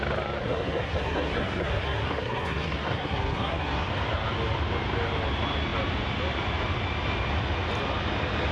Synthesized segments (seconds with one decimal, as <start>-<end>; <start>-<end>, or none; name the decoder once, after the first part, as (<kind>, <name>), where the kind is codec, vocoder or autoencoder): 0.4-3.9 (codec, SNAC)

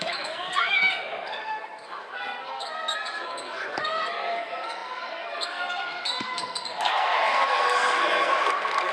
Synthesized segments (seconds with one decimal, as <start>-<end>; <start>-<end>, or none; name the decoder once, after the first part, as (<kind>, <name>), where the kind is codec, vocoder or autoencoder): 0.0-8.9 (codec, SNAC)

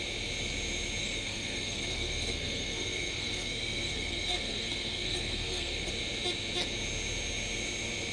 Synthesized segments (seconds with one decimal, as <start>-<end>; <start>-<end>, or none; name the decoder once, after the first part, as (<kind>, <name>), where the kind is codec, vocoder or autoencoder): 1.0-5.9 (codec, SNAC)

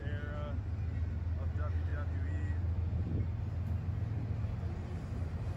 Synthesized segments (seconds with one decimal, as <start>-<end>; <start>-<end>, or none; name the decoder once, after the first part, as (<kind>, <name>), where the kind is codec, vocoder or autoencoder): none

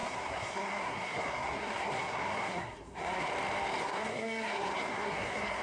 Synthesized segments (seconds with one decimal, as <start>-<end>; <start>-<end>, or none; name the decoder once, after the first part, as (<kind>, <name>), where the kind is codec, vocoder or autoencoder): 0.0-3.3 (codec, SNAC); 3.8-5.6

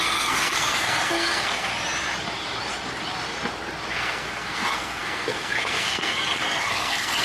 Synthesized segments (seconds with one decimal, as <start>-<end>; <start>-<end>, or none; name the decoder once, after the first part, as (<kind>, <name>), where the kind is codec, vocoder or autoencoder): 0.0-1.7 (codec, SNAC); 3.9-7.2